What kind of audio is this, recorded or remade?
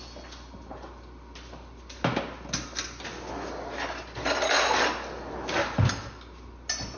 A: recorded